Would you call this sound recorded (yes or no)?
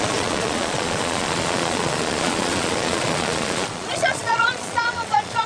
no